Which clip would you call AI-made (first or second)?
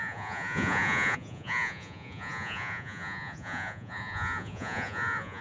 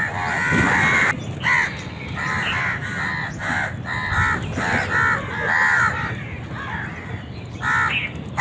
first